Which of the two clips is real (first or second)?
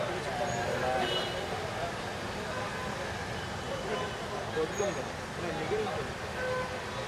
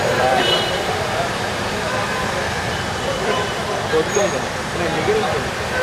first